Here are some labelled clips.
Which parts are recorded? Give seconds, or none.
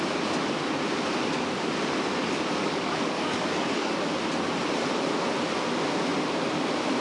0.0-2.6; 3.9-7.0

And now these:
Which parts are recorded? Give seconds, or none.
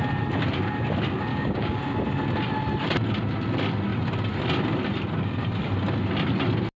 0.0-1.3; 1.8-6.8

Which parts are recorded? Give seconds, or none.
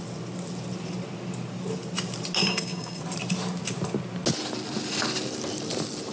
0.0-2.4; 3.0-6.1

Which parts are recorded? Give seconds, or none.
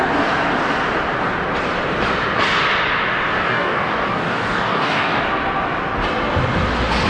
0.0-3.4; 5.2-7.1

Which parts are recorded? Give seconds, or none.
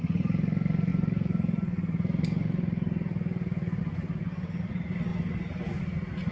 0.0-6.3